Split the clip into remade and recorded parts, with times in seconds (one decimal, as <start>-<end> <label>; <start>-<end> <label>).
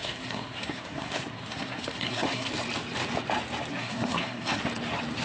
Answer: 0.0-2.5 remade; 2.5-3.7 recorded; 3.7-4.6 remade; 4.6-5.2 recorded